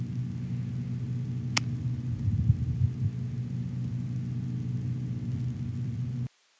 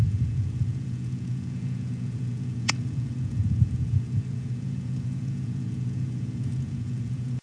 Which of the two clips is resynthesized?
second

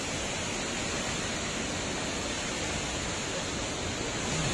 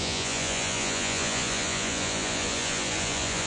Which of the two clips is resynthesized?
second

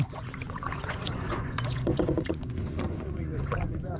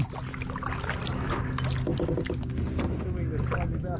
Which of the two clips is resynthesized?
first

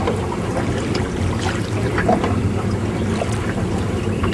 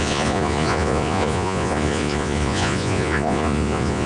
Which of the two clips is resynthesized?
second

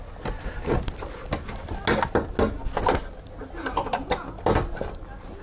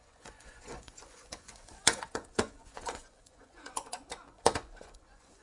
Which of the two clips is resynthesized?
second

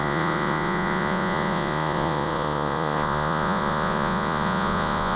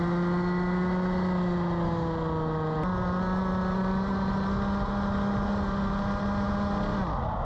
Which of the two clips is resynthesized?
first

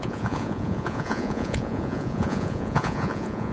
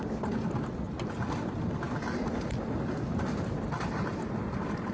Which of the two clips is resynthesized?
first